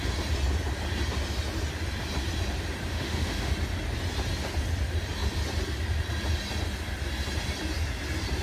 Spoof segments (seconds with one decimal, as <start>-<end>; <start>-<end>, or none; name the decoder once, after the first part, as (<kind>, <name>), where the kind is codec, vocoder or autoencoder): 2.9-3.5 (autoencoder, DAC-VAE)